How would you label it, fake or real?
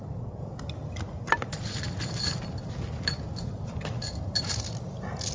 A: real